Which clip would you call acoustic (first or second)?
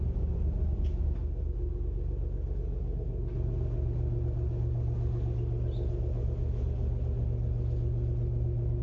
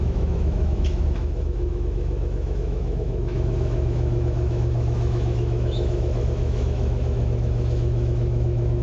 first